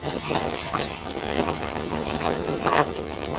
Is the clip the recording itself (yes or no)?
no